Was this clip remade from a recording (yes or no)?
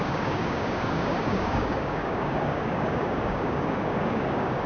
yes